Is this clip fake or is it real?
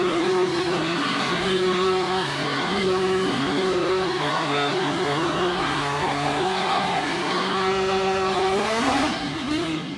fake